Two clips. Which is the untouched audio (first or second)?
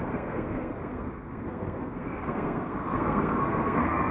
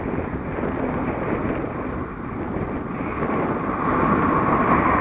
second